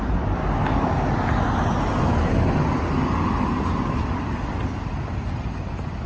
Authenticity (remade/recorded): recorded